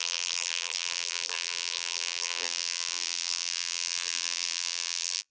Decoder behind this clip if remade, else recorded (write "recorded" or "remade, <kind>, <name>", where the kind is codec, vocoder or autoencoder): remade, vocoder, BigVGAN v2